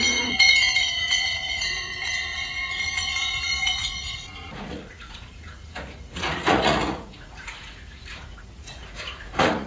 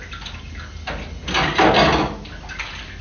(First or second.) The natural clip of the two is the second